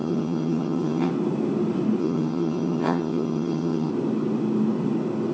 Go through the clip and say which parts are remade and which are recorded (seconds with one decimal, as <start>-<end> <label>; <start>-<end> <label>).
0.0-1.1 remade; 1.1-2.0 recorded; 2.0-3.9 remade; 3.9-5.3 recorded